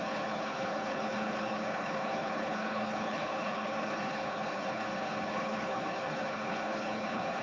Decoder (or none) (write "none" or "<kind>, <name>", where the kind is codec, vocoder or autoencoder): codec, HILCodec